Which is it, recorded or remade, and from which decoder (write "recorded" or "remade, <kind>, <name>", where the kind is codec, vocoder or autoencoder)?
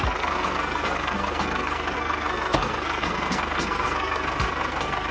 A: remade, codec, SNAC